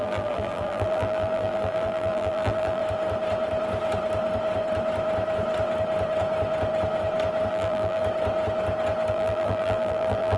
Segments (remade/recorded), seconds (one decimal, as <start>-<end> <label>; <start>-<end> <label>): 0.0-2.8 remade; 2.8-7.5 recorded; 7.5-8.0 remade; 8.0-9.1 recorded; 9.1-10.4 remade